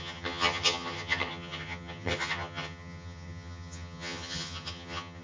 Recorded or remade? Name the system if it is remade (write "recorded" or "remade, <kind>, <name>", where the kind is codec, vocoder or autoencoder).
remade, vocoder, HiFi-GAN